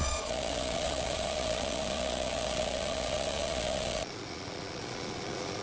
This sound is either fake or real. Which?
fake